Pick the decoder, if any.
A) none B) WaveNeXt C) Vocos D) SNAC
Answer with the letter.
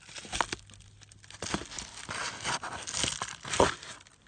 A